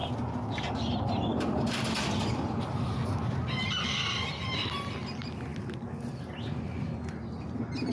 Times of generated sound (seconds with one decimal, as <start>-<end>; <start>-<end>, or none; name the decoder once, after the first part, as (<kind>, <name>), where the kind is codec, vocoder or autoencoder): none